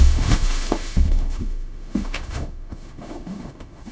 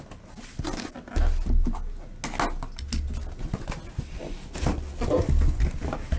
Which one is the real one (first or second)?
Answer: second